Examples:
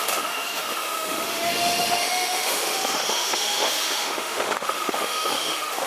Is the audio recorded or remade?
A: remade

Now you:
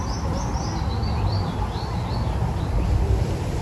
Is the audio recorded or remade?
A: recorded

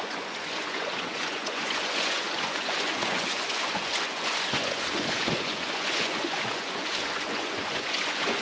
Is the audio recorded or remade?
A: remade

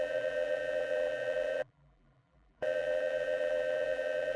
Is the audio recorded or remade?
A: remade